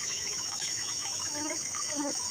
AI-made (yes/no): yes